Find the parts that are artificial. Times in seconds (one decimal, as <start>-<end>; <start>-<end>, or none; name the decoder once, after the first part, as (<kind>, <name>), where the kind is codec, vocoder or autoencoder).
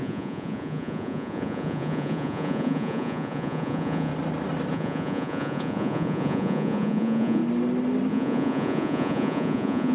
0.0-4.1 (vocoder, Vocos); 4.7-7.4; 8.1-9.9